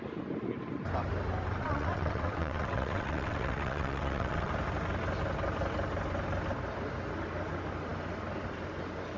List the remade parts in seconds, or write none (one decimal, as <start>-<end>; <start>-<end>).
1.6-4.5